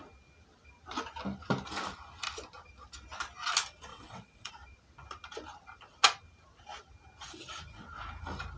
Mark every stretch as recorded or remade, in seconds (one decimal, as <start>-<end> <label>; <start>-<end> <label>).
0.0-3.9 recorded; 3.9-4.5 remade; 4.5-8.6 recorded